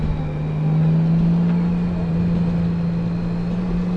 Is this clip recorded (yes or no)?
yes